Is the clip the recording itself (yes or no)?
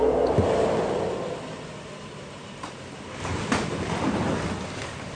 yes